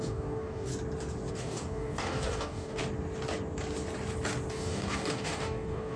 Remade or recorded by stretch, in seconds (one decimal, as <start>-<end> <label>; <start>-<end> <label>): 0.0-0.7 remade; 0.7-1.3 recorded; 1.3-2.8 remade; 2.8-4.5 recorded; 4.5-6.0 remade